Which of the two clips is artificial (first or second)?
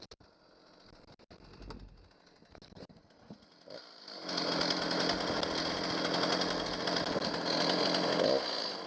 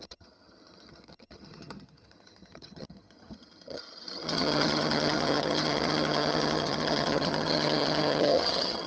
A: second